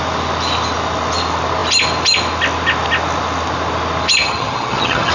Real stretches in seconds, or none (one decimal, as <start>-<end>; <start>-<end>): 0.0-4.2

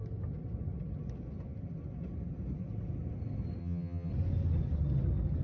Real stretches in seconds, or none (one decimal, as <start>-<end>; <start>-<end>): 0.0-3.6; 4.1-5.4

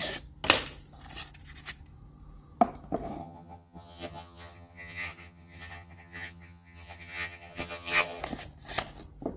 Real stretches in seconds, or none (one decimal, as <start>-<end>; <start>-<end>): 0.0-3.2; 8.2-9.4

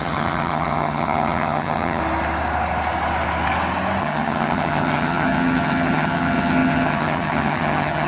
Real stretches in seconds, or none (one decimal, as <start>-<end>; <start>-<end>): 2.0-4.0

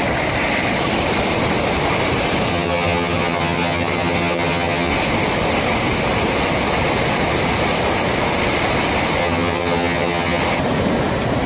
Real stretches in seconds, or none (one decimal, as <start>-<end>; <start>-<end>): 0.0-2.5; 4.9-9.2; 10.4-11.5